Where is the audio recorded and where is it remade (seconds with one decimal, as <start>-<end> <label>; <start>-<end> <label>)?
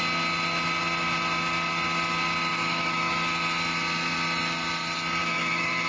0.0-2.5 recorded; 2.5-3.1 remade; 3.1-5.2 recorded; 5.2-5.9 remade